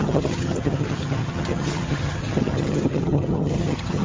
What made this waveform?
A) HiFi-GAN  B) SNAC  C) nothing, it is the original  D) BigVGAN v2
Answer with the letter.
A